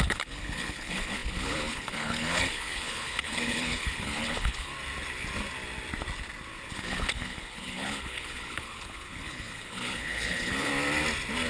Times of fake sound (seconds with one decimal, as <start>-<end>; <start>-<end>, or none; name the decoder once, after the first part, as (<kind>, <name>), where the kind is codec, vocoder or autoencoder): 0.0-4.7 (codec, HILCodec); 6.7-10.7